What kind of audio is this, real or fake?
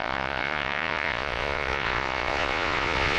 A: fake